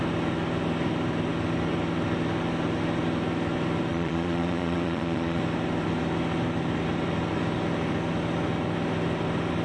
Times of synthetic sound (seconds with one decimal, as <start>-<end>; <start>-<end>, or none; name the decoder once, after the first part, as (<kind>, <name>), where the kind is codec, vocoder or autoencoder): 3.9-5.4 (vocoder, Vocos)